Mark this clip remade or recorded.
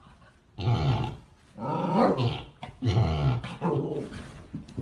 recorded